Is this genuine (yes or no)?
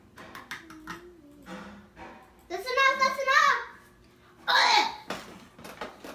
yes